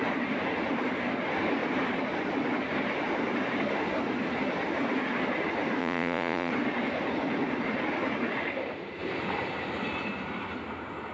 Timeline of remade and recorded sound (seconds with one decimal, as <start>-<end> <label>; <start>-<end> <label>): 0.0-5.8 recorded; 5.8-6.5 remade; 6.5-11.1 recorded